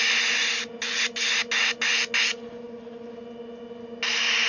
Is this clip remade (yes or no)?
no